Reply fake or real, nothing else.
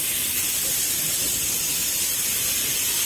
real